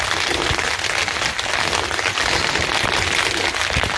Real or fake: real